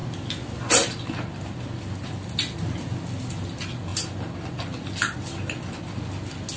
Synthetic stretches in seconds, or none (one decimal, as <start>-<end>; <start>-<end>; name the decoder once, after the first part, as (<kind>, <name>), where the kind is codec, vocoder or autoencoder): none

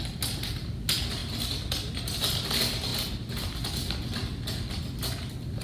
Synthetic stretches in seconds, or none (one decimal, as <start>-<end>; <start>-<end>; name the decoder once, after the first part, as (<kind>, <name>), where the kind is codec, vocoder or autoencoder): none